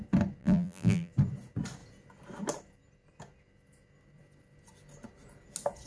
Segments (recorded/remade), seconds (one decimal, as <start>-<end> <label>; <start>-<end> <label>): 0.0-0.4 recorded; 0.4-1.1 remade; 1.1-5.9 recorded